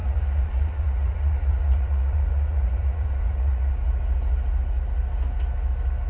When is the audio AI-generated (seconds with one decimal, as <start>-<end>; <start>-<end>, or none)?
0.0-3.7